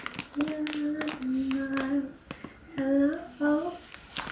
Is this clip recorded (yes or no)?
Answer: yes